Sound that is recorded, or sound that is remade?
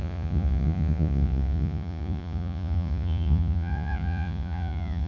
remade